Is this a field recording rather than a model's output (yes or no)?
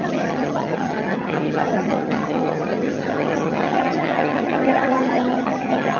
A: no